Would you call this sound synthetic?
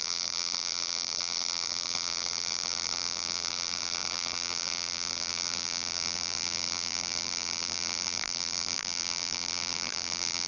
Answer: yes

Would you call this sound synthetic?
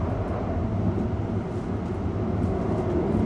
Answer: no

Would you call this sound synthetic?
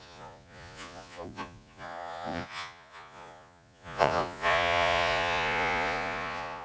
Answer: yes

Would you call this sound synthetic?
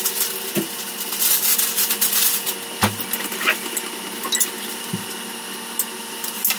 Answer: no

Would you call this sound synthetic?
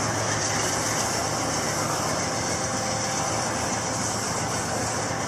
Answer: no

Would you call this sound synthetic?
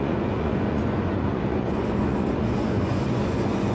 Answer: yes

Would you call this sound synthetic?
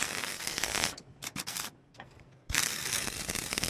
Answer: yes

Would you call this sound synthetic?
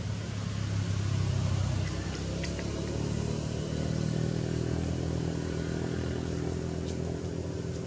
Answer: no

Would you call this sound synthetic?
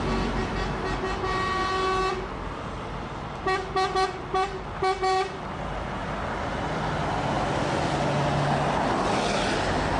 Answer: no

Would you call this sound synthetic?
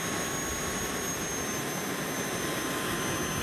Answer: no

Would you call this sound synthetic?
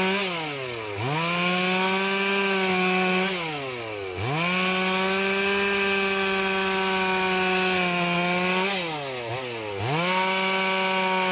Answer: no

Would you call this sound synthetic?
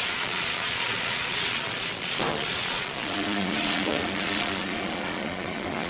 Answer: yes